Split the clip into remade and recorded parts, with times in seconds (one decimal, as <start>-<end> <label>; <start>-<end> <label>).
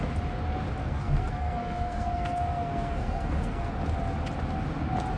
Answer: 0.0-0.8 recorded; 0.8-3.7 remade; 3.7-5.2 recorded